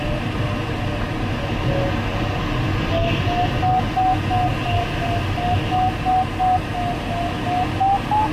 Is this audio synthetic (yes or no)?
no